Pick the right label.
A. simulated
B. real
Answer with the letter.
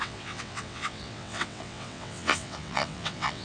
A